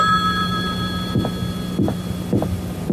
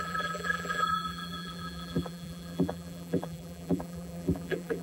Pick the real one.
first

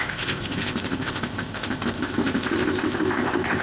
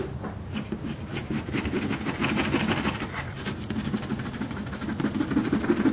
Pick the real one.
second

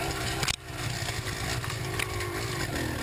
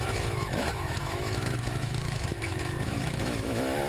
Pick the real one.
first